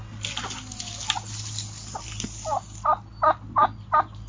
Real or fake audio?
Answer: real